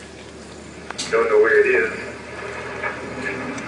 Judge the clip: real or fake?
real